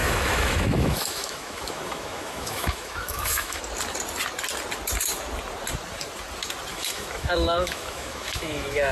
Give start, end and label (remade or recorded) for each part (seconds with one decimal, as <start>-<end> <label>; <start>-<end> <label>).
0.0-3.6 remade; 3.6-6.7 recorded; 6.7-8.9 remade